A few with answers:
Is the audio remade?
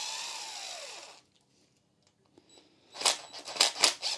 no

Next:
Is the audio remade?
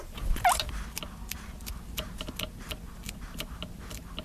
no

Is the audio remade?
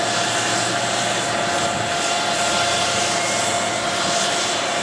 no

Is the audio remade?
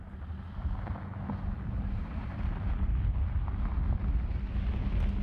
no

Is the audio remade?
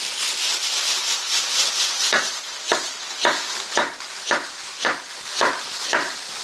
no